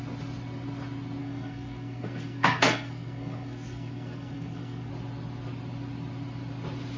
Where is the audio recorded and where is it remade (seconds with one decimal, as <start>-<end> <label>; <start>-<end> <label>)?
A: 0.0-1.2 recorded; 1.2-4.9 remade; 4.9-7.0 recorded